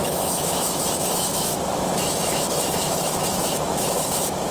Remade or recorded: remade